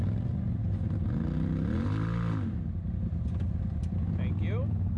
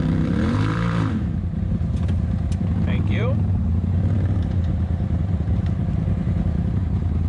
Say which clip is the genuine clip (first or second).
first